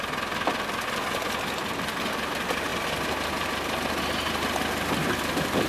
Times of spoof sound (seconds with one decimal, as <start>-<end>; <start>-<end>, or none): none

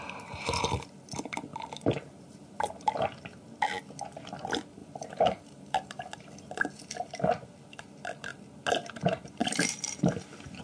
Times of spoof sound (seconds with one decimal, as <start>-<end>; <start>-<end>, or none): 1.5-2.7; 4.8-6.0; 9.4-10.1

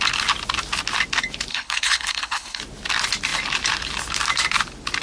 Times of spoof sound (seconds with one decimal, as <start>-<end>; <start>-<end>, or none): 1.5-2.6

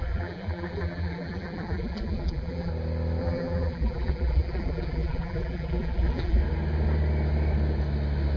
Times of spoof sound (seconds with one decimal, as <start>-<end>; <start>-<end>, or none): 0.0-2.7; 3.2-6.4

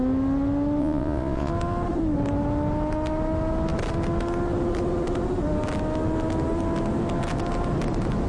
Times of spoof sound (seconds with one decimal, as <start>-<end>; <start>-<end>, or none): 0.8-1.5